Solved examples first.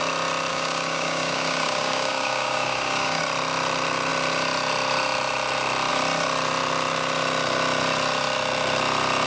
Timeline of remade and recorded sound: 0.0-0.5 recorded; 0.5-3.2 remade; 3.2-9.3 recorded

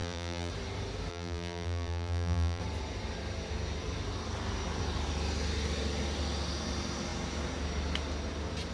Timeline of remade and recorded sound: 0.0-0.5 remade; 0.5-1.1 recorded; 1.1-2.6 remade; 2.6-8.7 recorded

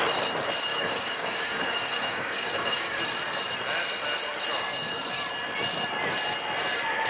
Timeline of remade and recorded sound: 0.0-0.7 recorded; 0.7-3.0 remade; 3.0-7.1 recorded

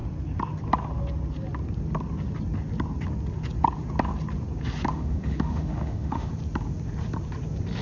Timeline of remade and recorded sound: 0.0-4.9 recorded; 4.9-6.3 remade; 6.3-7.8 recorded